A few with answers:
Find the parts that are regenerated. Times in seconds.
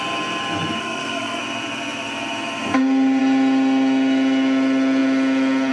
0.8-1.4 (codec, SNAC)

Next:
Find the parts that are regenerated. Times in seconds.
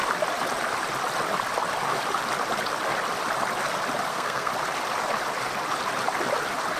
4.1-4.5 (codec, SNAC)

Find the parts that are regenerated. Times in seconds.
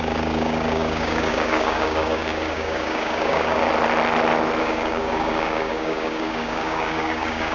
0.0-3.6 (codec, DAC); 4.6-7.5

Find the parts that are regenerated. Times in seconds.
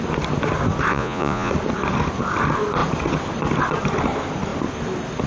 0.9-1.5 (vocoder, Vocos)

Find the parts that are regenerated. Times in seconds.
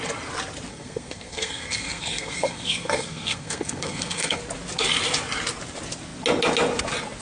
0.7-4.4 (codec, SNAC)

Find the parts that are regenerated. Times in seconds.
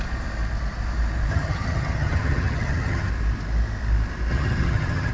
1.3-3.1 (vocoder, HiFi-GAN); 4.3-5.1